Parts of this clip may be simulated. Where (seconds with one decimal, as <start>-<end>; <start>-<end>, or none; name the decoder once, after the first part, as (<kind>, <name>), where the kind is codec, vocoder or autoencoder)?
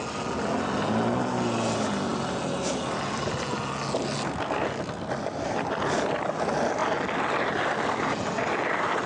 none